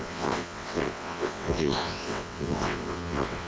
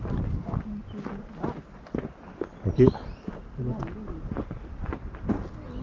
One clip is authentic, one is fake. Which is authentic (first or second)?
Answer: second